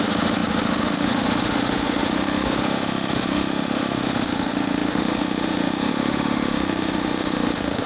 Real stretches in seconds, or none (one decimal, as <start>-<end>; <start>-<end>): none